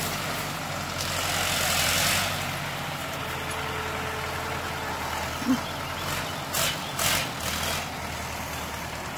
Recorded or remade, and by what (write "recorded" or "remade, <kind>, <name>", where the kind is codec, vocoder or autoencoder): recorded